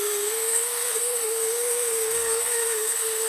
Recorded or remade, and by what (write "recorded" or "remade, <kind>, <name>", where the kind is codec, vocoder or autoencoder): remade, codec, SNAC